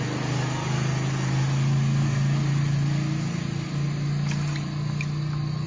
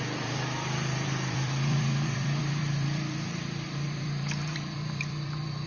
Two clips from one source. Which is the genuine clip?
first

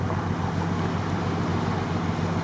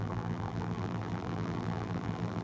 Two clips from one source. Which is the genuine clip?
first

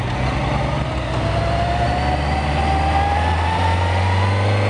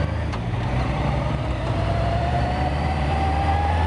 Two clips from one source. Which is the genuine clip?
first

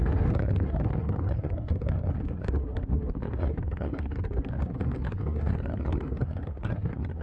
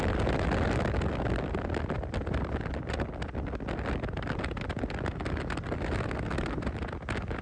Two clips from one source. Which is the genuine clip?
second